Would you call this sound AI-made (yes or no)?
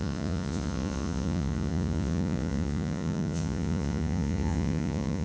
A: yes